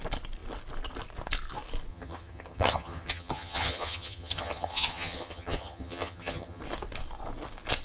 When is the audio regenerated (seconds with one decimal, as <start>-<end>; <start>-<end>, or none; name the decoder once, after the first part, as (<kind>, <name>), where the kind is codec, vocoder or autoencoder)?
1.9-6.6 (vocoder, HiFi-GAN)